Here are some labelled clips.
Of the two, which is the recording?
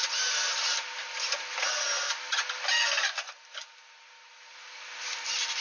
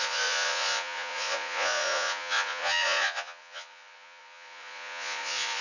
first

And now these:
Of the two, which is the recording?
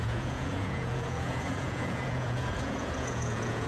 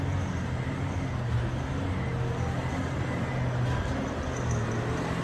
second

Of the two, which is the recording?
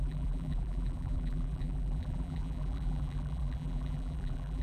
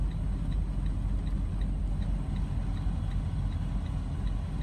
second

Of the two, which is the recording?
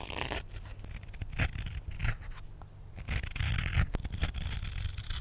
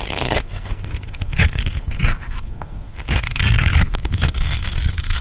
first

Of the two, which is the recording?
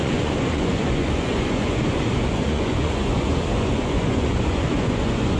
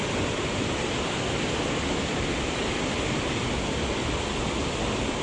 second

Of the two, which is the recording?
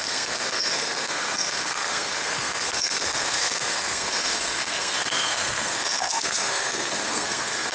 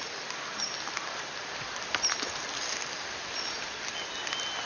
second